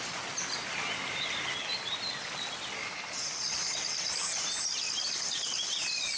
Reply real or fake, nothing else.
real